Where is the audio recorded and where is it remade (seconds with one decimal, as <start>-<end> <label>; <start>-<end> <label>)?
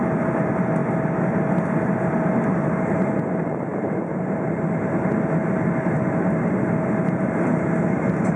0.0-8.4 recorded